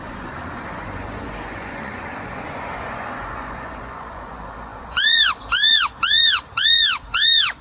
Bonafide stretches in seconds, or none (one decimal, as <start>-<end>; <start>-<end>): none